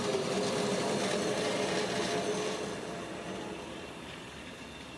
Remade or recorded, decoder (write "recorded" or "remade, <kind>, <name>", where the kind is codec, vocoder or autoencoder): recorded